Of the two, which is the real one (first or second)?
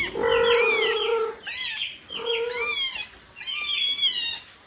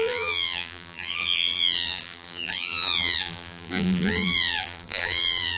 first